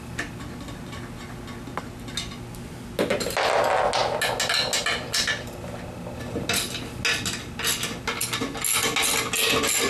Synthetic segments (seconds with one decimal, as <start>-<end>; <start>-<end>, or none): none

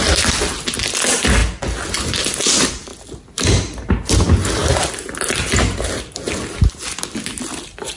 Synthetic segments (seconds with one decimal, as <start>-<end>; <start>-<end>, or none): none

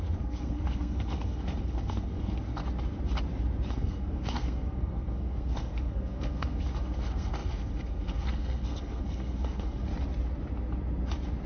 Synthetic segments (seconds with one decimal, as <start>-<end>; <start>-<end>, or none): 0.0-2.6; 3.7-9.9

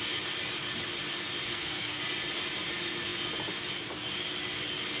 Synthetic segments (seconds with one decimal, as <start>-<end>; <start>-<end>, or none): 1.5-2.0

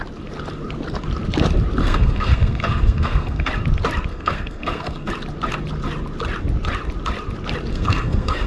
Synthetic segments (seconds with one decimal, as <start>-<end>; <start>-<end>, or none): 1.8-3.5; 4.1-5.1; 7.7-8.5

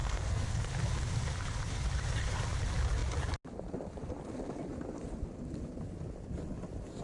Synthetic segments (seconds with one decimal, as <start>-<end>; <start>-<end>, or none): 0.0-0.7

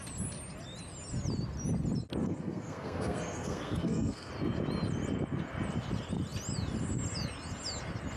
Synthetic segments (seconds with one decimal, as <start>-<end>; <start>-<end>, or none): 2.2-4.3